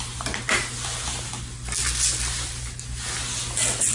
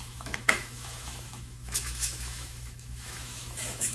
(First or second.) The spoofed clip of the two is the second